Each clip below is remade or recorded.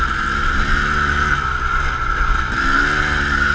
recorded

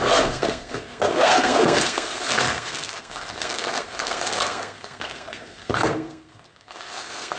remade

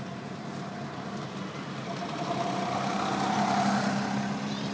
recorded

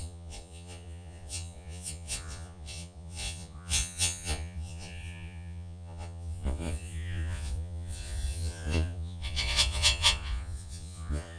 remade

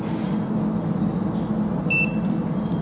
recorded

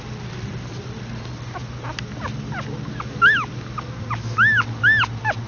recorded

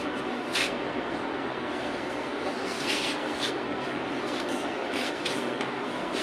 remade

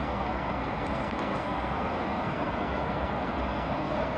remade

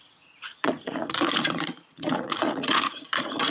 remade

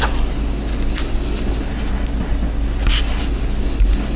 recorded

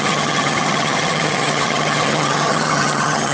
remade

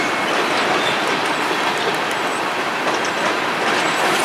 recorded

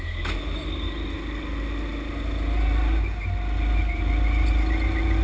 recorded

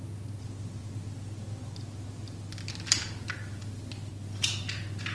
recorded